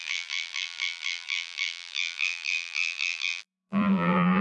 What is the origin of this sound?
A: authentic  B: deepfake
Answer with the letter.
B